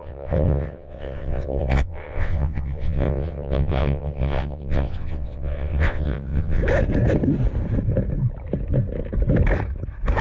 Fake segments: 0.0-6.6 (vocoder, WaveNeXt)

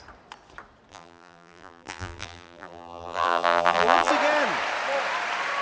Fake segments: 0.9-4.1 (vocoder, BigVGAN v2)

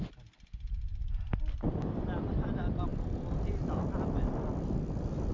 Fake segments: none

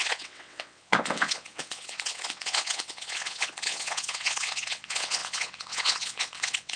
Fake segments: 0.0-6.8 (vocoder, WaveNeXt)

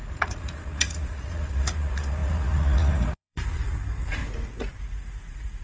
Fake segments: 0.0-4.2 (vocoder, Vocos); 4.8-5.6

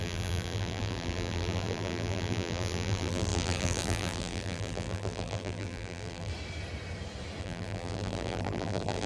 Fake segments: 0.0-6.3 (vocoder, BigVGAN v2); 7.4-9.1

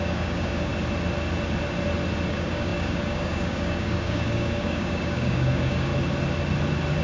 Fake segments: 0.0-0.7 (codec, DAC); 2.3-5.9